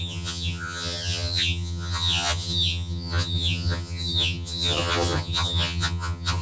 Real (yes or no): no